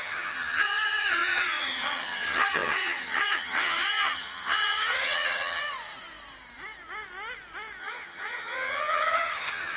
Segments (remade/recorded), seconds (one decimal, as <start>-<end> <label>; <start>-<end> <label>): 0.0-5.6 remade; 5.6-7.8 recorded; 7.8-9.8 remade